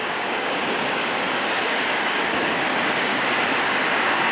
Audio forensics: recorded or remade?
remade